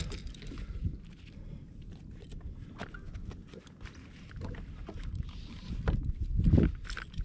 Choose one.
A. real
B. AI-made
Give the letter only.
A